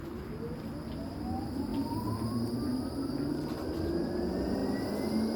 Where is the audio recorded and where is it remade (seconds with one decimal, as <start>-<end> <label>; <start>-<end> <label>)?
0.0-5.4 recorded